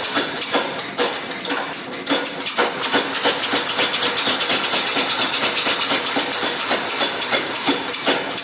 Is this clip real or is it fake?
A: real